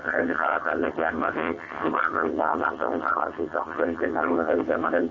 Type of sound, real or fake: fake